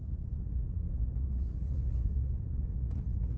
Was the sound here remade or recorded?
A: remade